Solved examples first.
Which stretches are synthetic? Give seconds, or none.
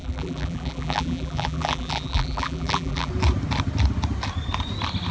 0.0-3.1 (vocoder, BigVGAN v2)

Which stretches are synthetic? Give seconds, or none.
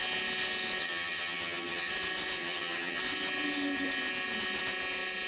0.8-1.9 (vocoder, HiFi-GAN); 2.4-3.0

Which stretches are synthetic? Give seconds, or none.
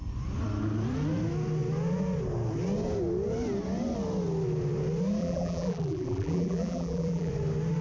5.2-7.3 (vocoder, BigVGAN v2)